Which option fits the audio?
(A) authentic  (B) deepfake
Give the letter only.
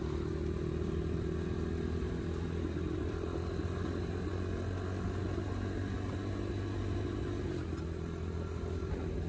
A